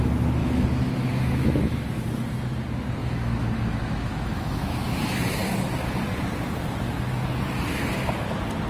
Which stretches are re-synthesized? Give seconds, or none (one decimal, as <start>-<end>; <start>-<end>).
0.4-2.1; 3.0-5.0